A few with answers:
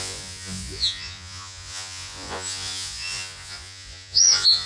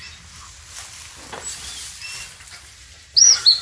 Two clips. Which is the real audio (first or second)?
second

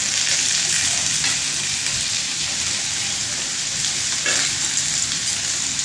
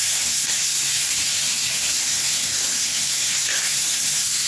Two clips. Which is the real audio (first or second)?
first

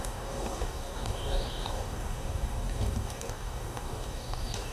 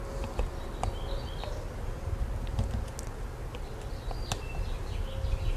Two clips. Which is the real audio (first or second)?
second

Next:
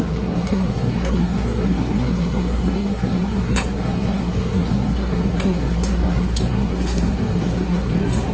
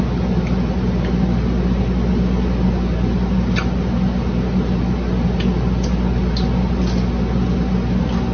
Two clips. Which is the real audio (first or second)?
second